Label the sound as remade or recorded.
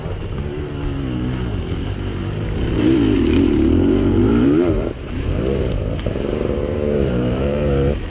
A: remade